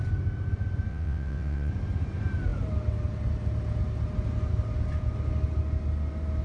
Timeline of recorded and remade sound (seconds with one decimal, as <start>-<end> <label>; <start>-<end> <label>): 0.0-0.9 recorded; 0.9-1.7 remade; 1.7-6.4 recorded